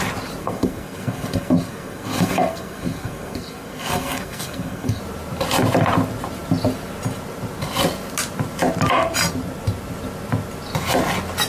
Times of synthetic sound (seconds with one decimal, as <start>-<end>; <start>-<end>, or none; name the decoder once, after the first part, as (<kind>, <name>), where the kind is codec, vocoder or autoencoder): 0.4-5.0 (codec, SNAC)